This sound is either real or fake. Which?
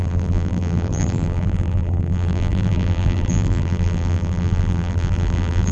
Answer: fake